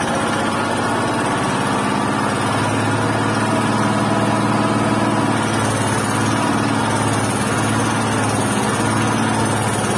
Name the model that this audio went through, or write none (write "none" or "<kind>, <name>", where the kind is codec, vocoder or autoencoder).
none